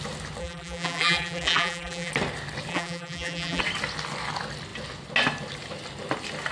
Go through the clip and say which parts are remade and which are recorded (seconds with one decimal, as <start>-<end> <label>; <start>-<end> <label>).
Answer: 0.0-0.4 recorded; 0.4-2.1 remade; 2.1-2.7 recorded; 2.7-3.6 remade; 3.6-6.5 recorded